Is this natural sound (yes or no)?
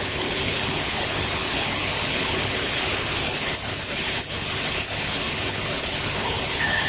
no